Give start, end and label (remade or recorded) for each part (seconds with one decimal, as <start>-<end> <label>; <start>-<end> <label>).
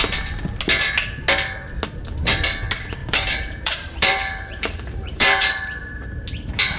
0.0-3.0 recorded; 3.0-6.1 remade; 6.1-6.8 recorded